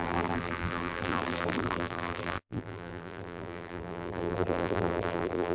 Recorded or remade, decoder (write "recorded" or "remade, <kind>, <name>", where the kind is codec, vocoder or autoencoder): remade, vocoder, BigVGAN v2